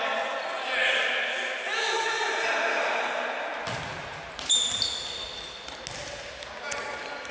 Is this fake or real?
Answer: real